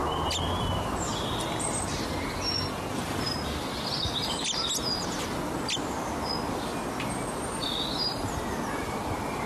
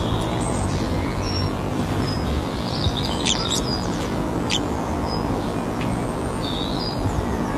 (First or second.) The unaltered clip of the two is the first